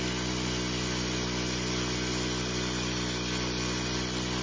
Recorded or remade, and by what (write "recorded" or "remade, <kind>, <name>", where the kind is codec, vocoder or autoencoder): recorded